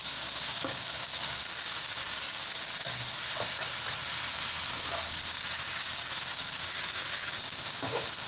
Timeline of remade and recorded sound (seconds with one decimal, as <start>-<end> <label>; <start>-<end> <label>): 0.0-2.7 remade; 2.7-5.1 recorded; 5.1-8.3 remade